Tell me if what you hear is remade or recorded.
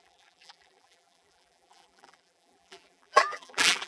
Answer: remade